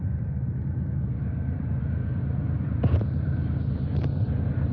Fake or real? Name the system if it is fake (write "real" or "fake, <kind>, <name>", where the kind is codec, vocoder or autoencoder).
fake, vocoder, BigVGAN v2